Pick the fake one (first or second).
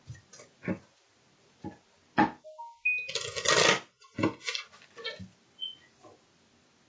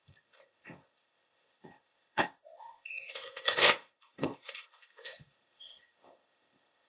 second